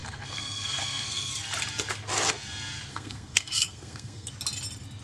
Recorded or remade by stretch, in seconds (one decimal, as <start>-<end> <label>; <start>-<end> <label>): 0.0-1.3 remade; 1.3-2.9 recorded; 2.9-4.3 remade; 4.3-5.0 recorded